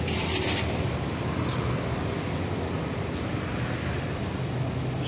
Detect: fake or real fake